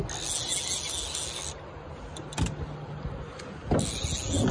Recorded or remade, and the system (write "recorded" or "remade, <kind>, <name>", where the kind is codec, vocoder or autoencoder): recorded